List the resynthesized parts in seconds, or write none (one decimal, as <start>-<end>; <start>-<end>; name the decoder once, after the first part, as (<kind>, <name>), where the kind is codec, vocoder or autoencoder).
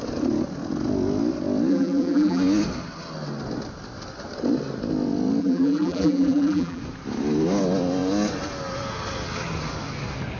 1.7-2.4 (vocoder, BigVGAN v2); 5.4-6.8